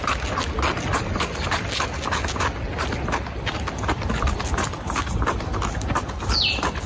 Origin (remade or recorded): recorded